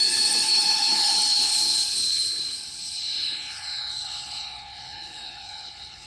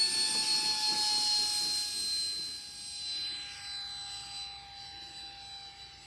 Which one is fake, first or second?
first